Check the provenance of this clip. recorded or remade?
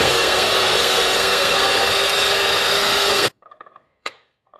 remade